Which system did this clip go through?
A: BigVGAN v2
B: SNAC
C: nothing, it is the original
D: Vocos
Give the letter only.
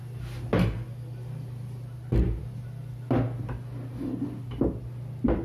C